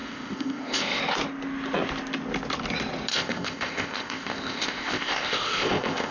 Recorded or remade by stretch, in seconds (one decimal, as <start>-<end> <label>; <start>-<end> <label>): 0.0-1.0 remade; 1.0-3.1 recorded; 3.1-6.1 remade